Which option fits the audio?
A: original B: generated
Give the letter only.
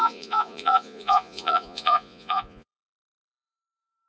B